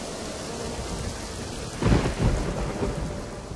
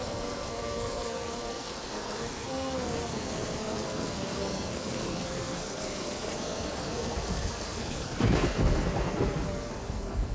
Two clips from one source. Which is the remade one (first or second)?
second